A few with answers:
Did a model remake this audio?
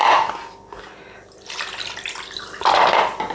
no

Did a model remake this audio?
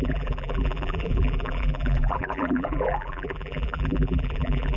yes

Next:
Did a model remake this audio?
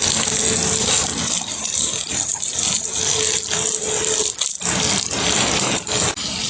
no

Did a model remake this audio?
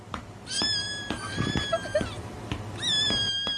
yes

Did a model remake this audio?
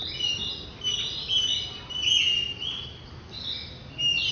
no